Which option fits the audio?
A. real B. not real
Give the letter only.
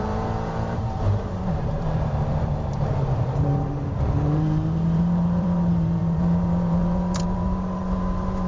B